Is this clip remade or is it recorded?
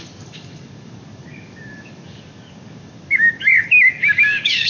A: remade